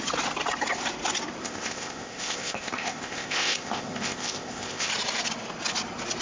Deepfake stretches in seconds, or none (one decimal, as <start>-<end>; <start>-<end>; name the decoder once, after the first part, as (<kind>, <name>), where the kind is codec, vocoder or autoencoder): 1.4-4.9 (codec, ZipCodec)